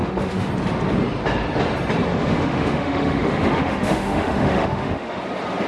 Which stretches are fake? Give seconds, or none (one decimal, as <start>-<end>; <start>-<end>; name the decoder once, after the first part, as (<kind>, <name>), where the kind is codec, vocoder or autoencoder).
0.0-0.5 (autoencoder, DAC-VAE); 2.1-5.2